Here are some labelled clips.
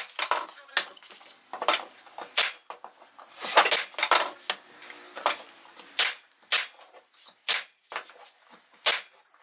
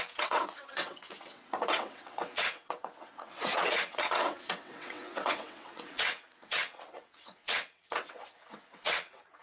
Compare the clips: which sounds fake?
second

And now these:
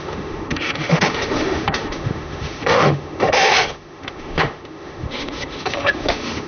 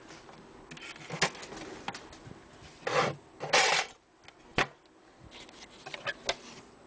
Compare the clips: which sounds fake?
first